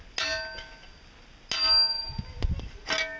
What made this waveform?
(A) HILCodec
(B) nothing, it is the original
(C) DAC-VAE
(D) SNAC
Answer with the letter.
B